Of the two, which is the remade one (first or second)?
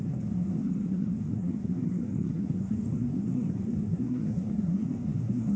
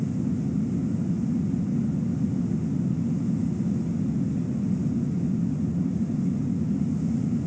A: first